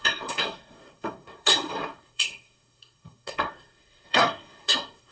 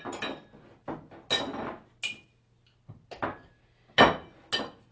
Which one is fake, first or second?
first